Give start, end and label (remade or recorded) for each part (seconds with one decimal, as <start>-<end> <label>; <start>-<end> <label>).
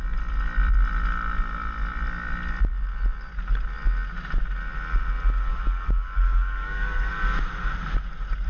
0.0-5.5 recorded; 5.5-7.1 remade; 7.1-8.5 recorded